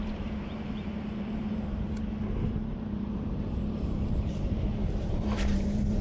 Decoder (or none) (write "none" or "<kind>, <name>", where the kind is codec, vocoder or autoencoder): vocoder, BigVGAN v2